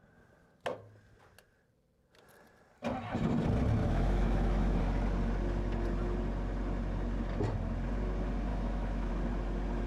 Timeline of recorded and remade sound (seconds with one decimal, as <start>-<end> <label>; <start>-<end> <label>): 0.0-3.8 recorded; 3.8-4.8 remade; 4.8-8.5 recorded; 8.5-9.1 remade; 9.1-9.9 recorded